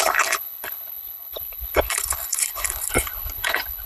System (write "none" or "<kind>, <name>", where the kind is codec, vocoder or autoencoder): codec, HILCodec